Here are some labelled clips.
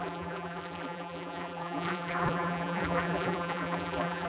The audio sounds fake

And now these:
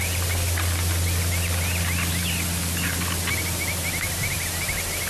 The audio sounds real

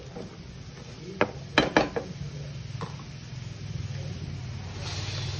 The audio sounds real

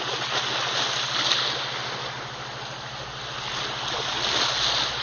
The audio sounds real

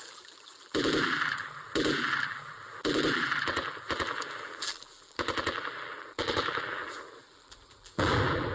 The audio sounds fake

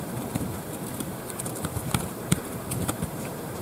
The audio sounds fake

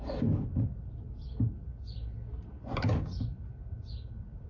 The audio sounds real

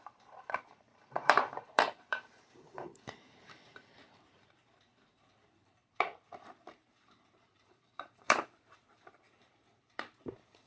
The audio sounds fake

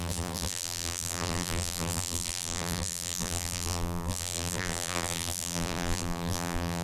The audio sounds fake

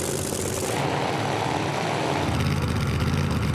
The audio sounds real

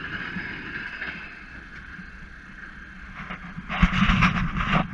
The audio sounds real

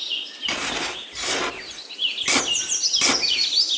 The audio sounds real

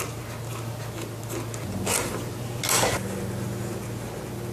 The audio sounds real